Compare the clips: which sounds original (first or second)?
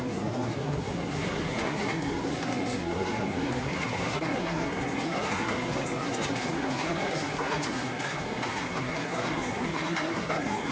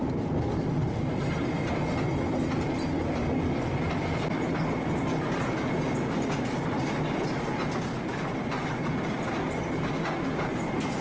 second